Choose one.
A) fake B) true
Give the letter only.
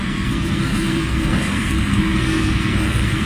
A